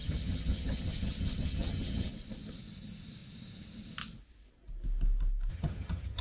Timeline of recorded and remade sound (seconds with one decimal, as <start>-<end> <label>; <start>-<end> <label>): 0.0-2.1 remade; 2.1-5.5 recorded; 5.5-6.2 remade

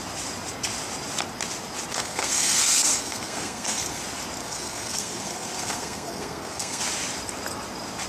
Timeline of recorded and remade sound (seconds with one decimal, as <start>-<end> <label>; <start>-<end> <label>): 0.0-1.9 recorded; 1.9-4.0 remade; 4.0-4.4 recorded; 4.4-6.8 remade; 6.8-8.1 recorded